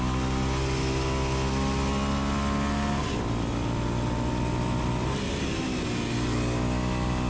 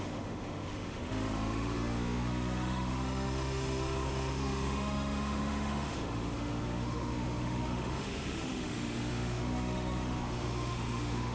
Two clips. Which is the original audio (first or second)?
first